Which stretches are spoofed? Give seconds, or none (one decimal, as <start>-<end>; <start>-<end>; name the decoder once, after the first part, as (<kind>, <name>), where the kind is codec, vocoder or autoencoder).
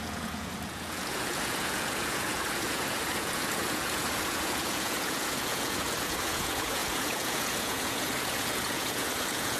0.0-9.6 (vocoder, Vocos)